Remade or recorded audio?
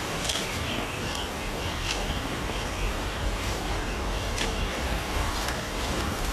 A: remade